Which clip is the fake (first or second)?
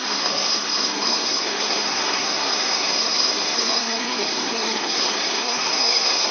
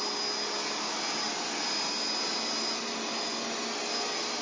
first